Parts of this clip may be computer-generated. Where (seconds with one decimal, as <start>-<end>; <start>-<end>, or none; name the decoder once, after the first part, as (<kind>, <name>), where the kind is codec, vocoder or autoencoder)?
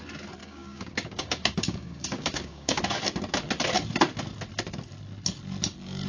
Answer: 0.4-2.8 (codec, DAC)